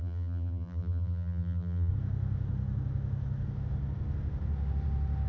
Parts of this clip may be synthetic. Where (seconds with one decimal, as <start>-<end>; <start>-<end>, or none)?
0.0-1.9